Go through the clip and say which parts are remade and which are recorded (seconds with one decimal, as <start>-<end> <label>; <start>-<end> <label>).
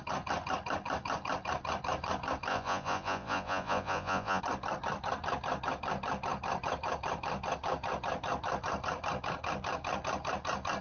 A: 0.0-2.5 recorded; 2.5-4.4 remade; 4.4-10.8 recorded